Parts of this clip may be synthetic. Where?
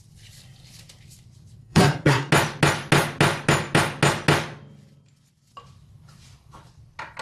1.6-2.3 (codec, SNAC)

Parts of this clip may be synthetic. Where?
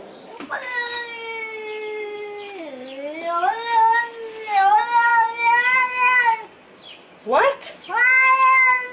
none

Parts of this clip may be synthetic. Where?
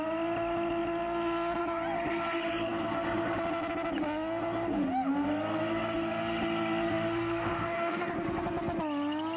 7.5-8.1 (autoencoder, DAC-VAE)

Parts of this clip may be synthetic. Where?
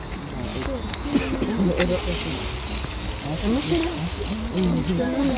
none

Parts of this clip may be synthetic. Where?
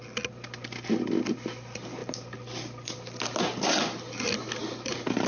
4.6-5.3 (vocoder, BigVGAN v2)